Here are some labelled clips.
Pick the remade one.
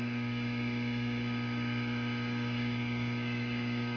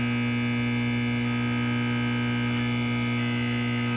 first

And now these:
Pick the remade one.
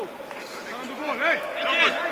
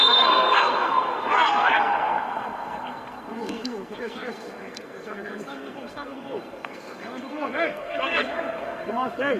second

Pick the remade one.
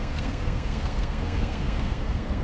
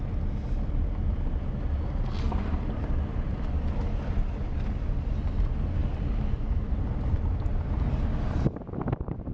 first